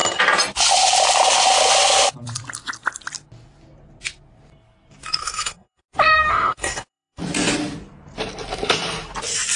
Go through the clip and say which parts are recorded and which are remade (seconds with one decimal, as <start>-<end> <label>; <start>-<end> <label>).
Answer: 0.0-5.2 recorded; 5.2-5.8 remade; 5.8-6.3 recorded; 6.3-7.2 remade; 7.2-9.6 recorded